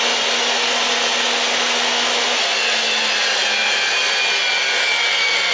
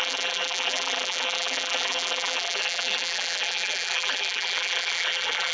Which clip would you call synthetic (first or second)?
second